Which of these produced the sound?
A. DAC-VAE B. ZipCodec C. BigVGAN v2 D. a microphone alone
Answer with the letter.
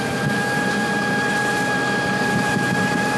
D